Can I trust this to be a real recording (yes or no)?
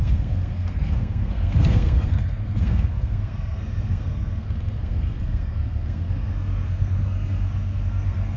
no